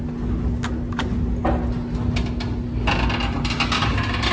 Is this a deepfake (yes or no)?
no